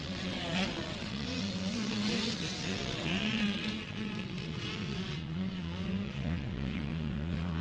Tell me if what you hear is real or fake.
fake